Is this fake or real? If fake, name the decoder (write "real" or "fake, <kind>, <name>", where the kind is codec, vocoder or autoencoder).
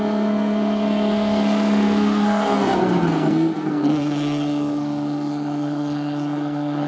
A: fake, codec, SNAC